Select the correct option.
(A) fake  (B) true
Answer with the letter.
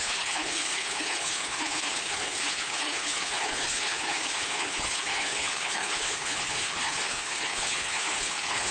A